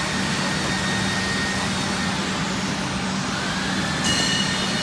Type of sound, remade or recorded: recorded